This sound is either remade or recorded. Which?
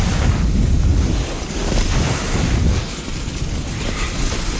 recorded